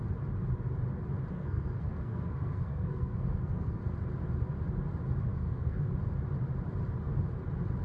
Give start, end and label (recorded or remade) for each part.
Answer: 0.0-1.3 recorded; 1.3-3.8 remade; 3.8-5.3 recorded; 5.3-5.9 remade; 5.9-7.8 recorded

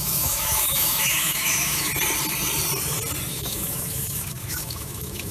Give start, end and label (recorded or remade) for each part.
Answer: 0.0-1.9 remade; 1.9-3.3 recorded; 3.3-5.3 remade

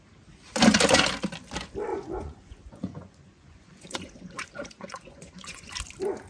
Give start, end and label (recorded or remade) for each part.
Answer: 0.0-1.9 recorded; 1.9-5.7 remade; 5.7-6.3 recorded

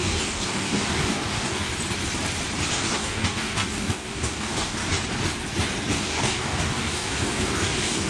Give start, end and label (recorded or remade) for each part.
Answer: 0.0-1.7 remade; 1.7-2.7 recorded; 2.7-4.8 remade; 4.8-5.9 recorded; 5.9-8.1 remade

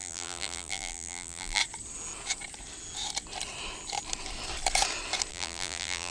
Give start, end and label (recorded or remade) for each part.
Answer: 0.0-1.6 remade; 1.6-5.3 recorded; 5.3-6.1 remade

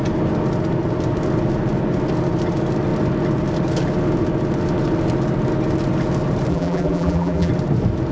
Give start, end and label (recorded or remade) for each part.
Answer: 0.0-6.5 recorded; 6.5-7.5 remade; 7.5-8.1 recorded